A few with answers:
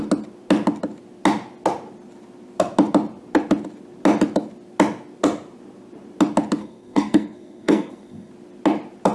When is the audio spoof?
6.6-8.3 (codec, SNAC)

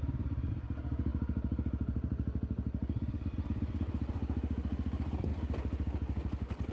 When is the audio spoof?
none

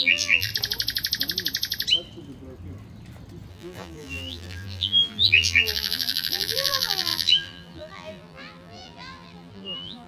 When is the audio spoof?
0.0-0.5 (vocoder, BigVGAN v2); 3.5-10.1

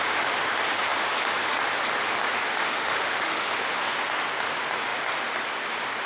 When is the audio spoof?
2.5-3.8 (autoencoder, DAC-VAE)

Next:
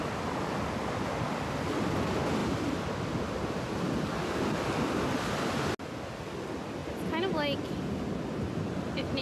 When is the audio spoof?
none

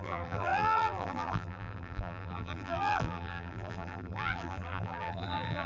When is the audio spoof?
0.0-5.7 (vocoder, BigVGAN v2)